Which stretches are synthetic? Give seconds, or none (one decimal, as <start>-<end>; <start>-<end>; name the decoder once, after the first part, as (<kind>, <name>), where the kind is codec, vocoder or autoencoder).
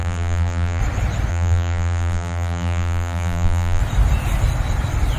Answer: 0.0-0.8 (vocoder, BigVGAN v2); 1.3-3.8